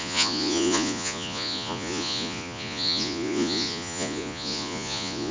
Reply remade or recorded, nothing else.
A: remade